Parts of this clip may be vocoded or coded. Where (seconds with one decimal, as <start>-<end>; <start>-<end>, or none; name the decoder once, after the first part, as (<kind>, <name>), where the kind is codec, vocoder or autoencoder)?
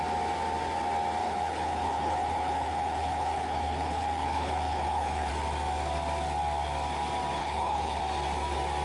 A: 1.2-5.3 (codec, HILCodec); 7.4-8.0